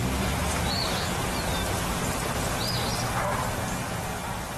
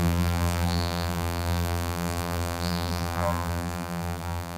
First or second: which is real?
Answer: first